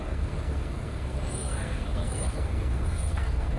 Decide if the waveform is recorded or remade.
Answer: remade